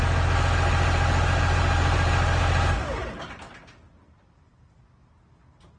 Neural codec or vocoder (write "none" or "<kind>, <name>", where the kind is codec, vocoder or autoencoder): none